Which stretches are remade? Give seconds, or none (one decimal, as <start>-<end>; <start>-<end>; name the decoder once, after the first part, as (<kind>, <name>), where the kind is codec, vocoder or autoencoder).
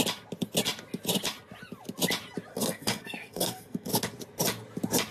2.5-3.9 (codec, SNAC)